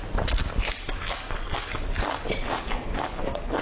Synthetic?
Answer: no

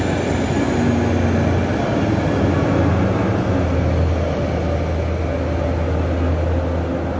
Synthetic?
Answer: no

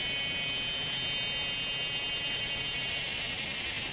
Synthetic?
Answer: no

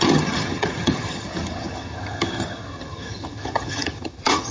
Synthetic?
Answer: yes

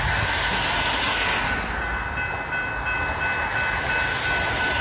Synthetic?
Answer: no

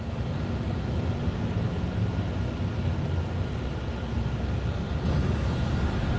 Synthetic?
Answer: no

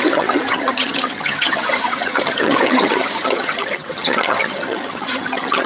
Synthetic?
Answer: yes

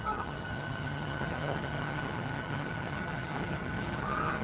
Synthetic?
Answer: yes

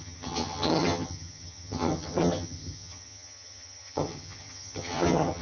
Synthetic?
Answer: yes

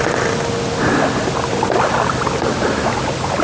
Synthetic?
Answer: no